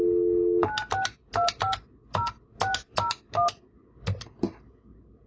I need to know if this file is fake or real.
real